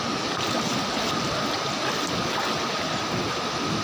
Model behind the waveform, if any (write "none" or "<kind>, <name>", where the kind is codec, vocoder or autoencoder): none